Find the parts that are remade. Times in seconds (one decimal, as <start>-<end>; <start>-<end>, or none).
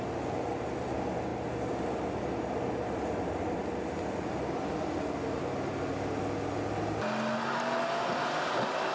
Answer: none